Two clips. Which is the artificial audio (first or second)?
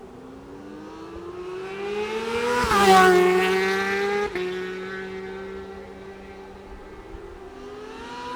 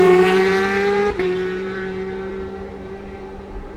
second